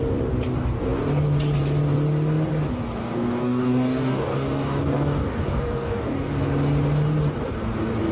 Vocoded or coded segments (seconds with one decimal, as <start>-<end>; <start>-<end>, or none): 3.0-6.2